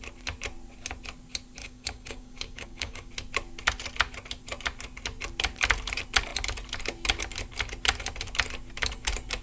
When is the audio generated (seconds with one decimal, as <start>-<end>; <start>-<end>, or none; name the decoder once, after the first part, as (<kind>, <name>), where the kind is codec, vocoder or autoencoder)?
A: 1.6-3.1 (codec, DAC)